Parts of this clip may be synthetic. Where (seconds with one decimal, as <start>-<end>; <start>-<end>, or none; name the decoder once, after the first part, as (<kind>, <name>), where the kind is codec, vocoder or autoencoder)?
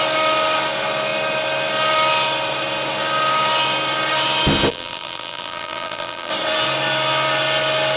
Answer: 4.7-6.3 (vocoder, BigVGAN v2)